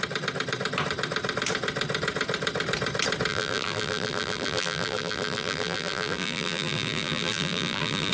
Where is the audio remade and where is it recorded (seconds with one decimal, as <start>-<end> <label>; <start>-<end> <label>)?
0.0-3.3 recorded; 3.3-8.1 remade